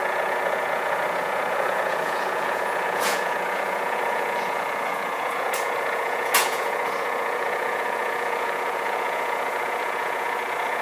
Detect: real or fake fake